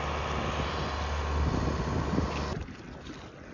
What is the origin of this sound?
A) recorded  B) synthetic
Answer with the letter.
A